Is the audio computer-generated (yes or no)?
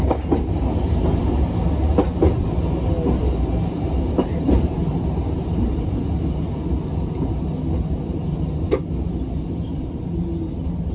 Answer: no